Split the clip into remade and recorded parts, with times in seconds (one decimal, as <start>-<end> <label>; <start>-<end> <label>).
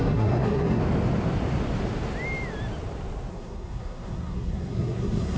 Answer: 0.0-0.8 remade; 0.8-3.3 recorded; 3.3-5.4 remade